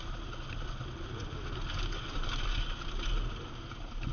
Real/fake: real